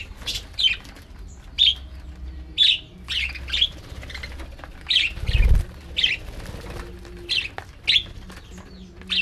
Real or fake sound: real